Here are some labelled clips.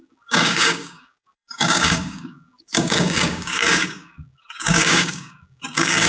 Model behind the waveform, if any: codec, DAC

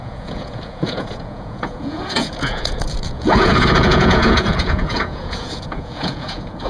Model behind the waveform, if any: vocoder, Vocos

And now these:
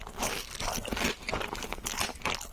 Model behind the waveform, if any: none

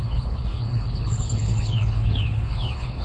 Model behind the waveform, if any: codec, HILCodec